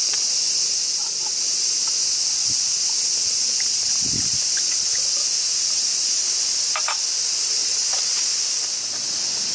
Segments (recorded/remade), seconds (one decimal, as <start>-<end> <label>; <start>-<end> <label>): 0.0-7.6 recorded; 7.6-8.3 remade; 8.3-9.5 recorded